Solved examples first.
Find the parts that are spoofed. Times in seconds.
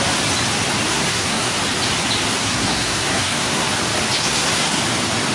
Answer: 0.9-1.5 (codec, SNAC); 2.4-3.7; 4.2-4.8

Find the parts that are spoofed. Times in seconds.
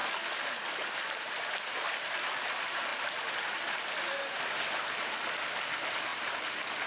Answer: none